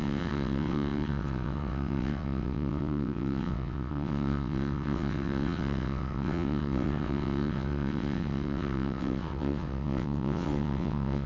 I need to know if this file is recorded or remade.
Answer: remade